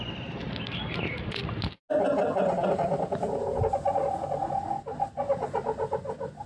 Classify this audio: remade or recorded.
recorded